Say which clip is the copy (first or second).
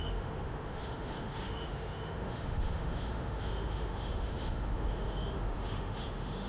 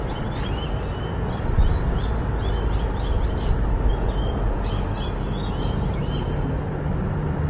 first